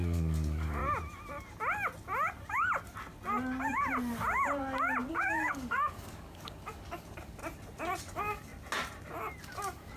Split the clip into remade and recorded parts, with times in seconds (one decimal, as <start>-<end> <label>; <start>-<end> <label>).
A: 0.0-0.8 remade; 0.8-5.1 recorded; 5.1-7.4 remade; 7.4-8.0 recorded; 8.0-8.5 remade; 8.5-9.4 recorded; 9.4-10.0 remade